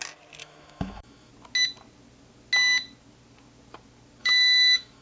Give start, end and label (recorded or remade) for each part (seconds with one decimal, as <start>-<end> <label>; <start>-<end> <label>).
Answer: 0.0-0.4 recorded; 0.4-1.3 remade; 1.3-4.2 recorded; 4.2-5.0 remade